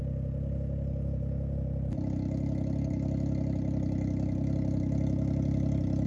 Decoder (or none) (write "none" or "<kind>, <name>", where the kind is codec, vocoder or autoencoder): none